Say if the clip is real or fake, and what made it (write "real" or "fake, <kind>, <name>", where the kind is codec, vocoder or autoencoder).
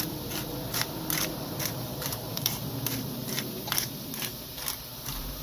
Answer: fake, vocoder, BigVGAN v2